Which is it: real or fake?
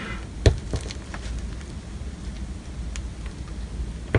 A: real